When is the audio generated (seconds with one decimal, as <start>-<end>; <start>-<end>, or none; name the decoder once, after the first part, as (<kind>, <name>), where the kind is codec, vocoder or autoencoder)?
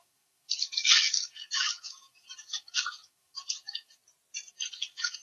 0.0-4.0 (autoencoder, DAC-VAE); 4.5-5.2